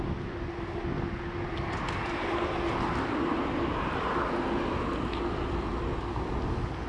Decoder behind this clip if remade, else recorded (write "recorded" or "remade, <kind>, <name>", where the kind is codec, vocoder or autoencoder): recorded